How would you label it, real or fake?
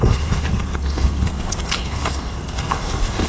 fake